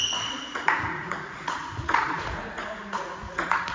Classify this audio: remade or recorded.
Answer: remade